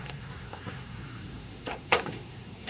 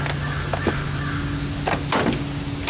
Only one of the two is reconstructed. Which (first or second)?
first